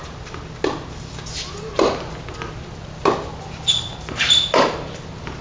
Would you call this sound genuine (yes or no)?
yes